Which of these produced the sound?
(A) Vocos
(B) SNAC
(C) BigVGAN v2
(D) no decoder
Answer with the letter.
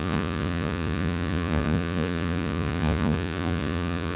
A